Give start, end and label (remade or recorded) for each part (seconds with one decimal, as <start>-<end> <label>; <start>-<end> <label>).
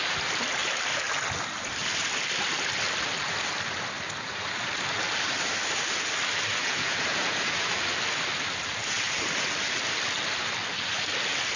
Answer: 0.0-6.6 recorded; 6.6-7.7 remade; 7.7-11.6 recorded